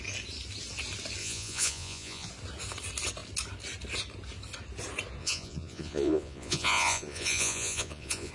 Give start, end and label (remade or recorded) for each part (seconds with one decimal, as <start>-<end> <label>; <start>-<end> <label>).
0.0-1.2 recorded; 1.2-2.3 remade; 2.3-5.2 recorded; 5.2-8.3 remade